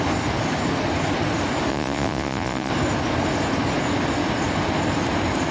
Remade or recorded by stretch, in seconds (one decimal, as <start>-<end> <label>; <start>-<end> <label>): 0.0-1.7 recorded; 1.7-2.7 remade; 2.7-5.5 recorded